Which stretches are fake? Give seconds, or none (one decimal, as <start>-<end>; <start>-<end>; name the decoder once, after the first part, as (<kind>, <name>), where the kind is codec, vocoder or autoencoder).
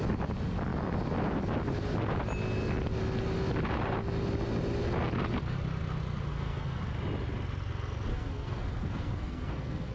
6.3-6.8 (codec, SNAC); 8.1-9.9